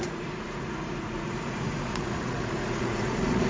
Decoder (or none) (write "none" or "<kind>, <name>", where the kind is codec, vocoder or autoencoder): vocoder, Vocos